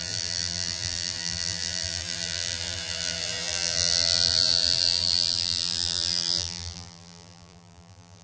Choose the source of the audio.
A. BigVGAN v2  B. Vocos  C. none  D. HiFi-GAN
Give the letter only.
A